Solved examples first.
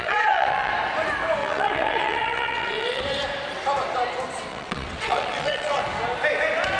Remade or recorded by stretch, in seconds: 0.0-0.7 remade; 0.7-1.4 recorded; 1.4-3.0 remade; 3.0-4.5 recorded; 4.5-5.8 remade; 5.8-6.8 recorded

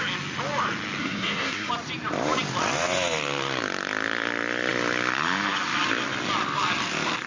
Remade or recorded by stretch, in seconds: 0.0-1.0 recorded; 1.0-1.7 remade; 1.7-7.3 recorded

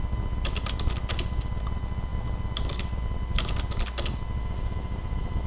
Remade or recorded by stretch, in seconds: 0.0-4.4 recorded; 4.4-5.5 remade